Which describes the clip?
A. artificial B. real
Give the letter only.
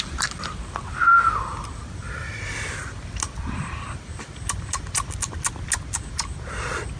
B